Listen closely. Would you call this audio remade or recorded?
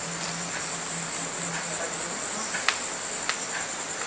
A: recorded